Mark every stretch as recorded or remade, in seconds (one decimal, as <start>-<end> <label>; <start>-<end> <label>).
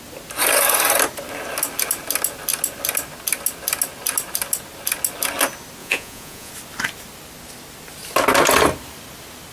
0.0-5.8 recorded; 5.8-6.5 remade; 6.5-9.5 recorded